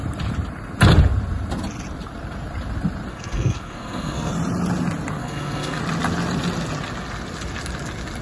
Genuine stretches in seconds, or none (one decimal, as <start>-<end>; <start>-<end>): 0.0-3.1; 4.3-5.2; 5.8-8.2